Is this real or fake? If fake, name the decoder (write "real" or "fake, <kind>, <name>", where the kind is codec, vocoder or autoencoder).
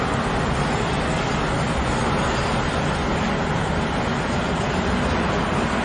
real